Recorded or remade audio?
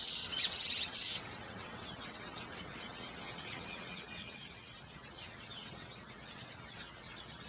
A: remade